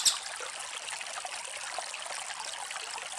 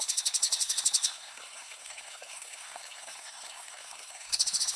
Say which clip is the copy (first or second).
second